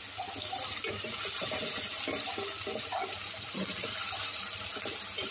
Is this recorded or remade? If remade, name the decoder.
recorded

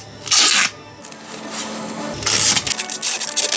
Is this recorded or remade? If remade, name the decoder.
recorded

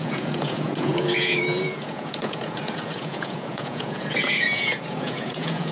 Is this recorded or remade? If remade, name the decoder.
remade, vocoder, Vocos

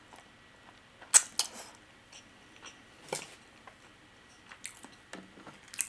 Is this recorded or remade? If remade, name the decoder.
recorded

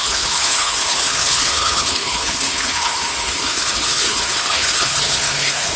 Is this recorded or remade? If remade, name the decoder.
remade, codec, HILCodec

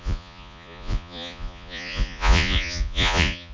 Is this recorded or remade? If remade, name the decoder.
remade, vocoder, Vocos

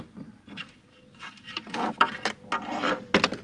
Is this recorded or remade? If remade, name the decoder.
recorded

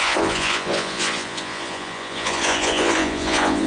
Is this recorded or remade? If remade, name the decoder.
remade, vocoder, Vocos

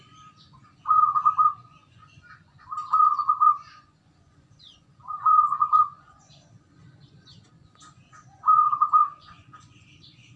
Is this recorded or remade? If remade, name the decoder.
remade, vocoder, Vocos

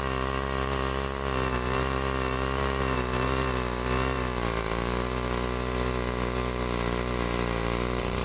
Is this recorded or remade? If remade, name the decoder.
remade, vocoder, BigVGAN v2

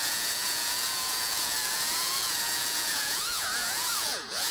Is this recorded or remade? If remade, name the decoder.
remade, vocoder, Vocos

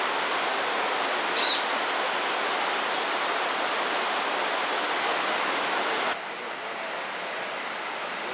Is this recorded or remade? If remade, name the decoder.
recorded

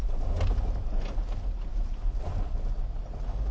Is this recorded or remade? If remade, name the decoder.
recorded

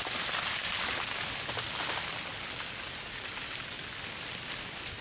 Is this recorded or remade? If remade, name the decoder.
recorded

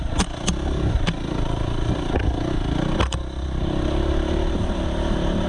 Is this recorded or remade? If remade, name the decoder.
recorded